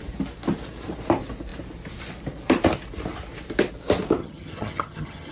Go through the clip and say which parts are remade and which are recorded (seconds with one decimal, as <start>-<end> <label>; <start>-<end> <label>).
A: 0.0-4.2 recorded; 4.2-5.3 remade